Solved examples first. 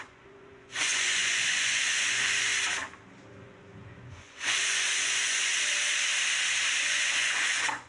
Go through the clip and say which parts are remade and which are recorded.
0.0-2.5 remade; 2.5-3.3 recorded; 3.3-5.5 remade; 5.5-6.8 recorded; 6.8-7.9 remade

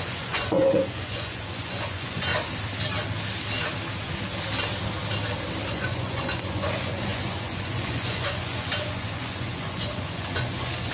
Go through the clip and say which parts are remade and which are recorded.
0.0-2.3 remade; 2.3-5.7 recorded; 5.7-10.9 remade

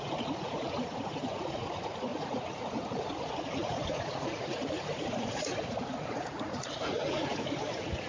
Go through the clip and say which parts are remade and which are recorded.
0.0-8.1 remade

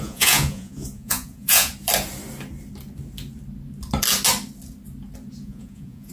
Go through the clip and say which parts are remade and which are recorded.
0.0-1.7 remade; 1.7-5.4 recorded; 5.4-6.1 remade

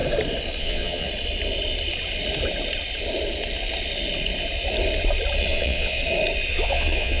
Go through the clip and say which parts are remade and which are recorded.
0.0-0.6 recorded; 0.6-1.1 remade; 1.1-5.4 recorded; 5.4-6.0 remade; 6.0-6.5 recorded; 6.5-7.2 remade

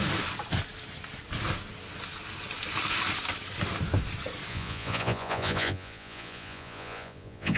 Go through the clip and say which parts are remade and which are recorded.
0.0-4.5 recorded; 4.5-7.6 remade